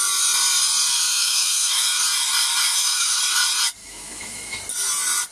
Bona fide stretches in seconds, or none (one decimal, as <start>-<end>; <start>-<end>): 0.0-1.1; 2.0-2.7; 3.2-3.8; 4.6-5.3